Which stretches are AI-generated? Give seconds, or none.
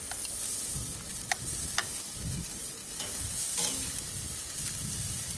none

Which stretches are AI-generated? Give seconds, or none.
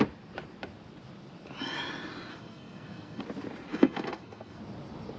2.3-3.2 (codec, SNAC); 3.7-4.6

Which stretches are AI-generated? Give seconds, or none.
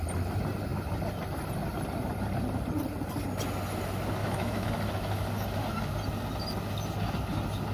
4.2-4.7 (autoencoder, DAC-VAE)